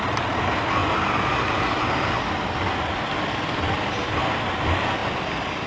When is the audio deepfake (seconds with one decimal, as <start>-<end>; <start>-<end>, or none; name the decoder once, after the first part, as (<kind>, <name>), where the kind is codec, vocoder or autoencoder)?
none